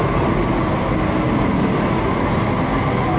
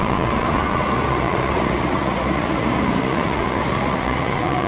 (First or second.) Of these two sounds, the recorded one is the first